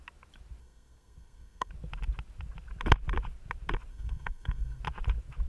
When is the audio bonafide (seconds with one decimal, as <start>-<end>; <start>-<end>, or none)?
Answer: 0.0-0.6; 1.7-3.9; 4.8-5.5